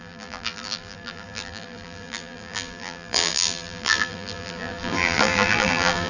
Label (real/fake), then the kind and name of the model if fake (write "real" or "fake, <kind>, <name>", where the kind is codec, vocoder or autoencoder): fake, vocoder, BigVGAN v2